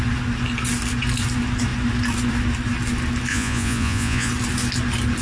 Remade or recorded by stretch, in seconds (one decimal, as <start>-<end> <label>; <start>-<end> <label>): 0.0-3.3 recorded; 3.3-4.3 remade; 4.3-5.2 recorded